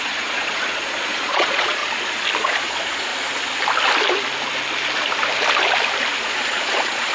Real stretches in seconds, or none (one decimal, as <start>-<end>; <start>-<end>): 1.8-2.4; 3.1-6.2